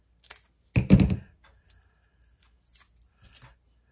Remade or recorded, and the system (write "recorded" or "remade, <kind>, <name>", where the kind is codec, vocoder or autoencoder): recorded